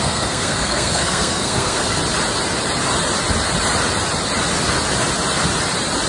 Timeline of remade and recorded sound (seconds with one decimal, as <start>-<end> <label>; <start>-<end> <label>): 0.0-2.0 remade; 2.0-6.1 recorded